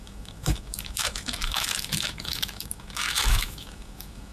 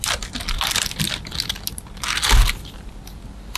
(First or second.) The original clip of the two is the second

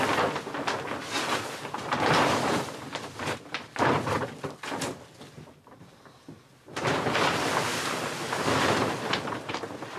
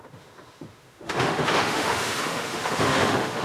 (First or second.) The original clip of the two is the first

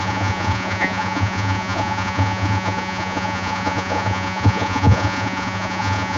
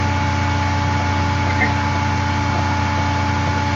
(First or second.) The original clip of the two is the second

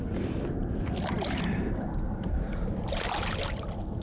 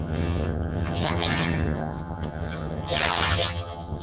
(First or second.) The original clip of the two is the first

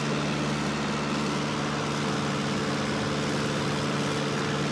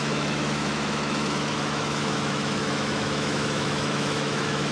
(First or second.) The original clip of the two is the first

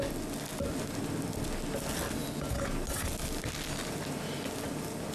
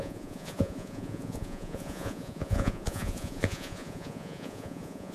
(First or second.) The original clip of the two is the first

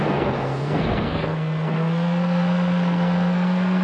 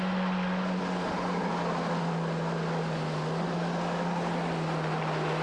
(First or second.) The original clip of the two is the second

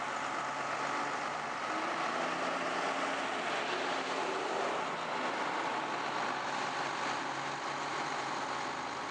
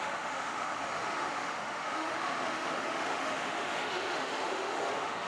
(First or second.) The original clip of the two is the first